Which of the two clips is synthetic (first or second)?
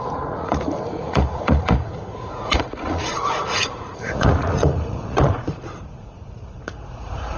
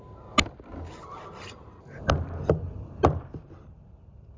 first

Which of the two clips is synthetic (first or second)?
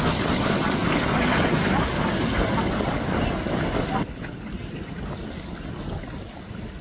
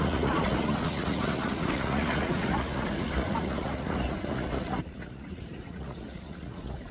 second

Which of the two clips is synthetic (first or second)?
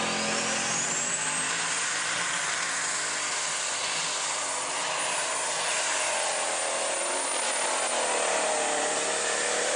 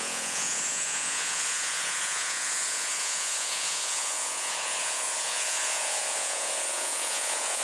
second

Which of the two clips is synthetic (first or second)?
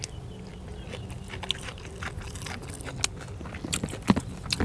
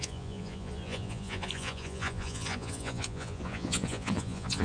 second